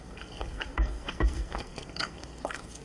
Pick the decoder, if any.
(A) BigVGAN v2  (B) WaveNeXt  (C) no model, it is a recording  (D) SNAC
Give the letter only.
D